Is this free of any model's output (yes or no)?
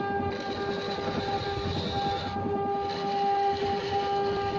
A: yes